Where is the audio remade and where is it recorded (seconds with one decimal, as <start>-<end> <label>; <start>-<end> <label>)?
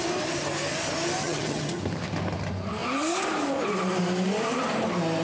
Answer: 0.0-1.2 recorded; 1.2-1.8 remade; 1.8-5.2 recorded